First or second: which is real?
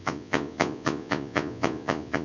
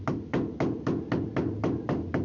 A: second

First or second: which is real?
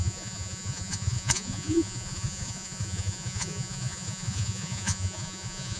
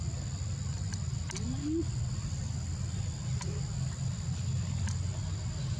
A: second